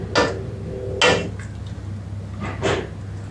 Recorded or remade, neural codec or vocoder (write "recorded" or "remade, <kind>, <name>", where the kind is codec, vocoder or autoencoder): recorded